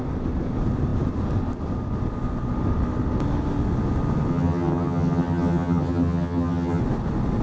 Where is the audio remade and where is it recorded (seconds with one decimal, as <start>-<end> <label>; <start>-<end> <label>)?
0.0-4.3 recorded; 4.3-6.8 remade; 6.8-7.4 recorded